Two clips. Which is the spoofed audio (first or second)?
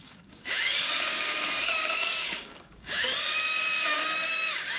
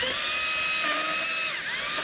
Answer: first